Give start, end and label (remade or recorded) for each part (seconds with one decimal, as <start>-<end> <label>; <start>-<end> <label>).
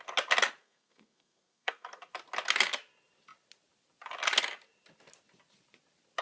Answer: 0.0-0.6 recorded; 0.6-2.1 remade; 2.1-6.2 recorded